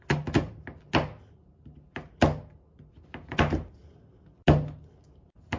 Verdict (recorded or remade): recorded